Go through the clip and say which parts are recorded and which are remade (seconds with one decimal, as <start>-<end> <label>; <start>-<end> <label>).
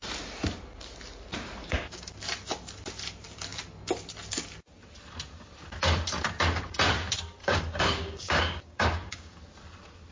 0.0-1.6 recorded; 1.6-2.1 remade; 2.1-7.4 recorded; 7.4-9.4 remade; 9.4-10.1 recorded